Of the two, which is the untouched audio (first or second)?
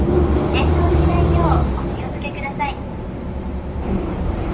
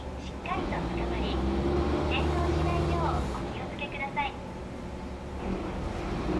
second